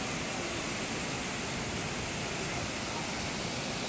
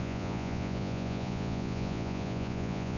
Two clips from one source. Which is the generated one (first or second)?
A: second